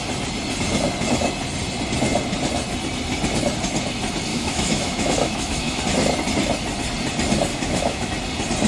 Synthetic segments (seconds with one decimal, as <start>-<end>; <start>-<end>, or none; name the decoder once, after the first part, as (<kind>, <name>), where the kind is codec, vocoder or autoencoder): 4.3-5.8 (autoencoder, DAC-VAE); 7.5-8.1